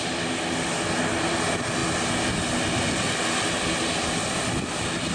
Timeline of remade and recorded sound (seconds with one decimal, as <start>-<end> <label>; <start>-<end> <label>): 0.0-5.1 recorded

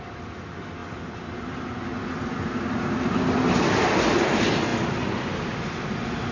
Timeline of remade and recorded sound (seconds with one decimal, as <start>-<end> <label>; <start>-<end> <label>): 0.0-6.3 recorded

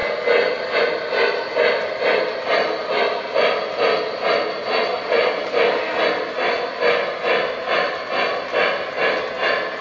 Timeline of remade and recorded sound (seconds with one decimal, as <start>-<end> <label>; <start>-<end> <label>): 0.0-4.6 recorded; 4.6-5.5 remade; 5.5-9.8 recorded

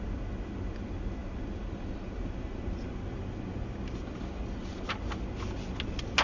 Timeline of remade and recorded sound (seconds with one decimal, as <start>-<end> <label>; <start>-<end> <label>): 0.0-6.2 recorded

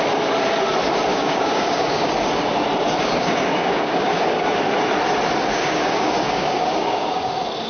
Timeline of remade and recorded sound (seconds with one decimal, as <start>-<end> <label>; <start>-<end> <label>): 0.0-1.1 recorded; 1.1-2.1 remade; 2.1-3.0 recorded; 3.0-4.7 remade; 4.7-5.6 recorded; 5.6-7.3 remade; 7.3-7.7 recorded

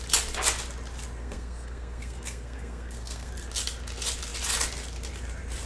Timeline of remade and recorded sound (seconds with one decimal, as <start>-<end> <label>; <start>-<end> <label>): 0.0-1.2 recorded; 1.2-3.3 remade; 3.3-5.7 recorded

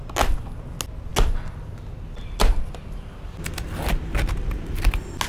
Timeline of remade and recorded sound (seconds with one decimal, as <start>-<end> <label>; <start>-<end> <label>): 0.0-5.3 recorded

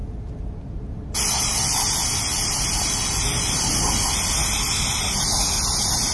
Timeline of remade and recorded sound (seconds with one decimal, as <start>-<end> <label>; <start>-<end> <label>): 0.0-6.1 recorded